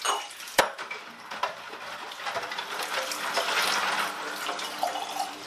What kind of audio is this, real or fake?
real